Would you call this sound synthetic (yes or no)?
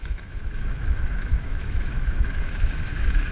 yes